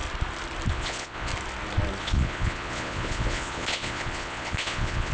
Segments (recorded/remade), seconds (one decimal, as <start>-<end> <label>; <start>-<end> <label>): 0.0-0.7 recorded; 0.7-1.3 remade; 1.3-2.0 recorded; 2.0-5.1 remade